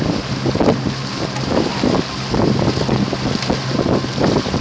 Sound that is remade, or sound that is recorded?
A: recorded